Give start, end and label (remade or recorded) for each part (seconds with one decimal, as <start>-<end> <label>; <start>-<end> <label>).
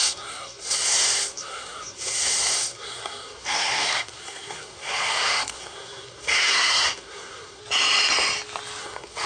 0.0-7.6 remade; 7.6-8.8 recorded; 8.8-9.3 remade